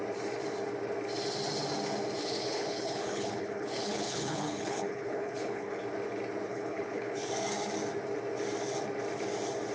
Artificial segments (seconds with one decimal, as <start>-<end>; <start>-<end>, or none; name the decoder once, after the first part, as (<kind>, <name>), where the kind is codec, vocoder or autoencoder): 2.2-5.8 (codec, HILCodec); 6.5-7.3